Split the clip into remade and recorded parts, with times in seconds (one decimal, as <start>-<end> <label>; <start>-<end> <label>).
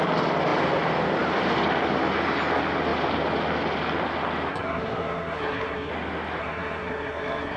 0.0-4.5 recorded; 4.5-5.9 remade; 5.9-6.4 recorded; 6.4-7.6 remade